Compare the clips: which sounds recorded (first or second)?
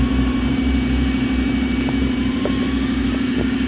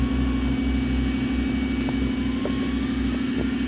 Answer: second